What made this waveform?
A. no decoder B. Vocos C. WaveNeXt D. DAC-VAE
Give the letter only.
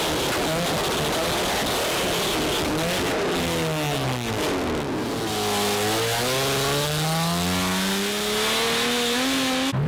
A